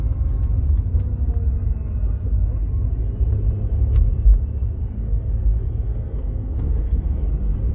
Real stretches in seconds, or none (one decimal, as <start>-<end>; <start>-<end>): 0.0-4.6